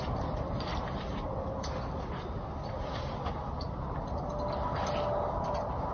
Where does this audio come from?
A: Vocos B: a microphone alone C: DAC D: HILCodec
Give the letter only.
B